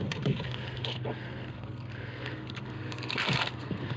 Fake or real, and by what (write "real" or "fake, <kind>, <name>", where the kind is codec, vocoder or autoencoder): fake, codec, SNAC